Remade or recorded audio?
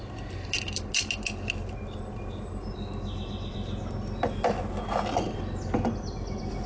recorded